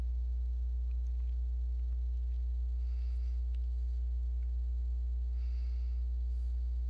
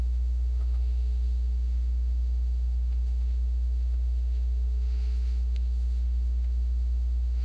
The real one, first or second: first